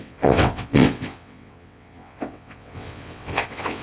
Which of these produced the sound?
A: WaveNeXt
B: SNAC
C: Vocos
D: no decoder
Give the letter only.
A